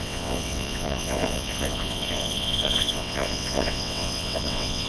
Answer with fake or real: fake